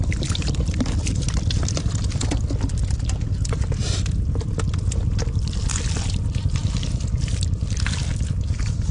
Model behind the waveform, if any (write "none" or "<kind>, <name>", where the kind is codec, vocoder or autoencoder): none